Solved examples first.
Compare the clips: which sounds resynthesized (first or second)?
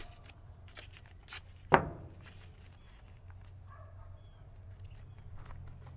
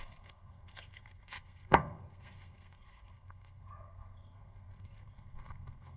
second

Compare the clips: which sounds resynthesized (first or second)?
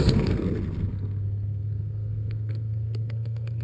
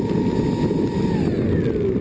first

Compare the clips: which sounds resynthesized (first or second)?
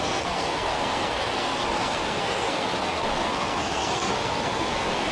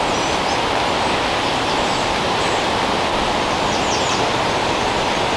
first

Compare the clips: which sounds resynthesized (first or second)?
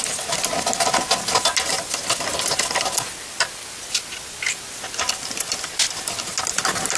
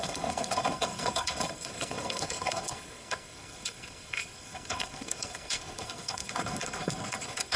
second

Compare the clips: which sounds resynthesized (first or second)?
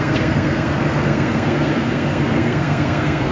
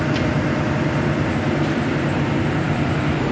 first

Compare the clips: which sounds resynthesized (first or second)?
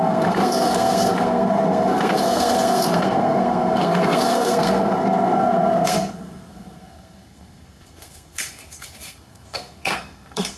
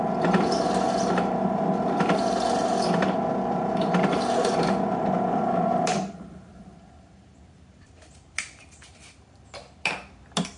first